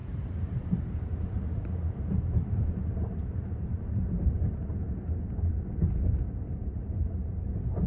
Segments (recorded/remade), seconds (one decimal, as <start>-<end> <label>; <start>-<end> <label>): 0.0-4.7 remade; 4.7-6.5 recorded; 6.5-7.5 remade; 7.5-7.9 recorded